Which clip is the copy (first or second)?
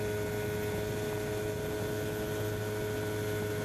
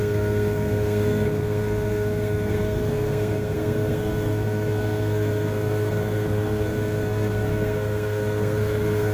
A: second